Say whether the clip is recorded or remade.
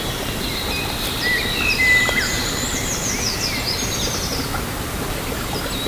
recorded